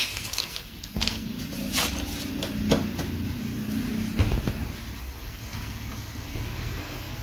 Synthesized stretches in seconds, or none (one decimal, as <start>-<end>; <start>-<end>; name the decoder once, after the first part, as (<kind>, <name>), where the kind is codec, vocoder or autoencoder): 0.0-1.3 (codec, SNAC); 5.0-7.2